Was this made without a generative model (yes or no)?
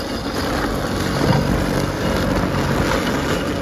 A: yes